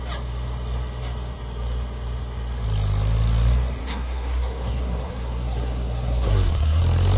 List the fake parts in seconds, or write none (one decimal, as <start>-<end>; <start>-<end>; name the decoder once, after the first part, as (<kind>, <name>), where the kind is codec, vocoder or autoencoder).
3.8-6.8 (codec, SNAC)